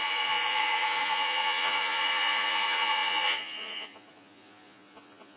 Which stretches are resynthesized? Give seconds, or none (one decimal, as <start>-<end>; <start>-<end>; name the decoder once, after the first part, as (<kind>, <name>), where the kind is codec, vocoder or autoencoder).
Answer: 0.0-5.4 (vocoder, Vocos)